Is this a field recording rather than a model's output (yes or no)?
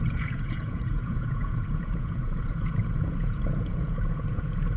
no